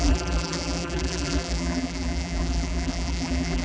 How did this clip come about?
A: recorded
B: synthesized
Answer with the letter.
B